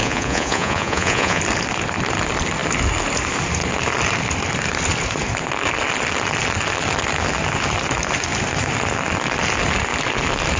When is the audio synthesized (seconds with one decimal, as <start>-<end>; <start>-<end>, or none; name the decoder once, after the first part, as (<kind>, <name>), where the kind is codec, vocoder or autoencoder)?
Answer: 0.0-1.4 (vocoder, Vocos)